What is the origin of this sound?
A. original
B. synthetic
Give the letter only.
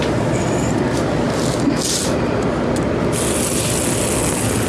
A